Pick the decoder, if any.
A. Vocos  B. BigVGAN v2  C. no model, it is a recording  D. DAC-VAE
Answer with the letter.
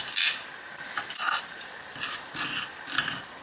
C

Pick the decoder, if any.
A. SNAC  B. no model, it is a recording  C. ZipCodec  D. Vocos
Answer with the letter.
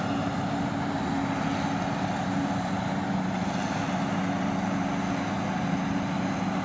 B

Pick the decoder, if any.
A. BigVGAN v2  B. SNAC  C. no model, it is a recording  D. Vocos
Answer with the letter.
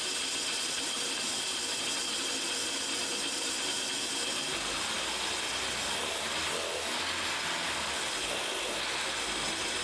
C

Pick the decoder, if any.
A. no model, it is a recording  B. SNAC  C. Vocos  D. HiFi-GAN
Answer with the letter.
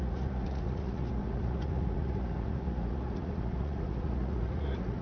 C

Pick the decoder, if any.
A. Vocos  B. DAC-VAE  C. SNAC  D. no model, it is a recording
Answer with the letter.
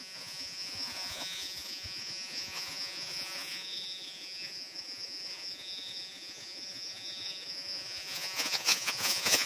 A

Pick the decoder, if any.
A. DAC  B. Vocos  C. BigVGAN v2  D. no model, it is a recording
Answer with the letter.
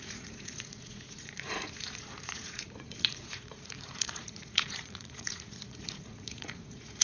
B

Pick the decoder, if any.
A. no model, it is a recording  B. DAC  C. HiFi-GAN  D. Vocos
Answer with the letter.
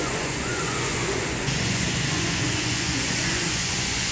D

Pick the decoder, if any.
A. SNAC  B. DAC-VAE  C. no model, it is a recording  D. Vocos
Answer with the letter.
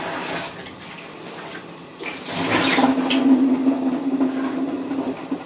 C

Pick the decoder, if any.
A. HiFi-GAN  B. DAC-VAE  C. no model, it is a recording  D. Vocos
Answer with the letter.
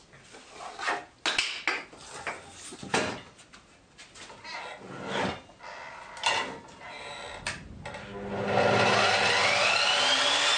C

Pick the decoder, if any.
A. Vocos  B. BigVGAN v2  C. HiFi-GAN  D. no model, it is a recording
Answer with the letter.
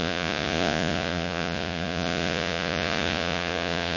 A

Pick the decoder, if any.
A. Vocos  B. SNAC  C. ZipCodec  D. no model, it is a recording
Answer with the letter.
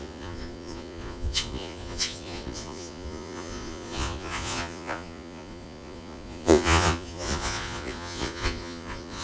A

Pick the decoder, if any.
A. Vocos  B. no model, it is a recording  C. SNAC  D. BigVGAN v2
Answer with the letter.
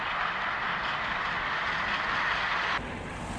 B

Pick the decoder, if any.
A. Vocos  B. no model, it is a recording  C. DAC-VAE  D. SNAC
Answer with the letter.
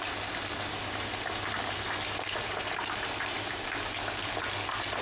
B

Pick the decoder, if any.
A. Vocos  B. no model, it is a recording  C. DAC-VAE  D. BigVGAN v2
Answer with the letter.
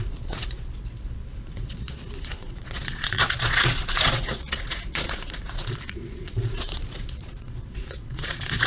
A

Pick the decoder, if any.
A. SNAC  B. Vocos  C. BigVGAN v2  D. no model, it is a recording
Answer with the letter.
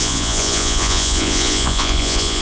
B